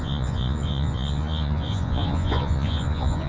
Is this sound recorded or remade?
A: remade